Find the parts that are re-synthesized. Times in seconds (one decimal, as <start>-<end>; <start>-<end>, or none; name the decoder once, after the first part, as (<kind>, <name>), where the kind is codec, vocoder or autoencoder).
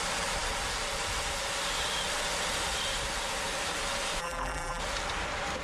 4.2-4.8 (vocoder, BigVGAN v2)